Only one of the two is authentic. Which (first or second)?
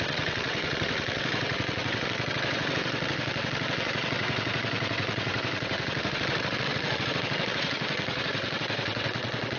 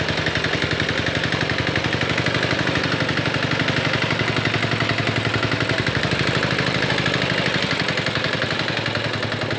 second